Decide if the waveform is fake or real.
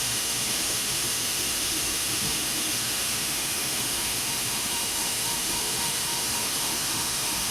fake